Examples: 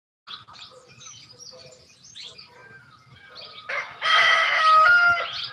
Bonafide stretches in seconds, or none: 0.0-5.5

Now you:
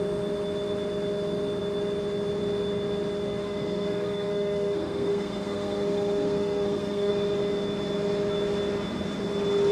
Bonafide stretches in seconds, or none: 0.0-3.4; 7.1-9.7

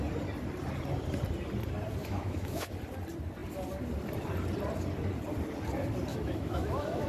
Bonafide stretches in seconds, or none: 0.0-2.0; 2.7-6.1